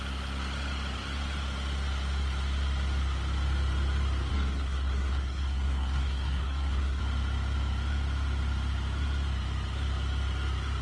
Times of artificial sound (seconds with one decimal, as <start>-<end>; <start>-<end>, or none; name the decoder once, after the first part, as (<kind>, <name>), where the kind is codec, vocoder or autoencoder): 4.3-7.0 (codec, SNAC)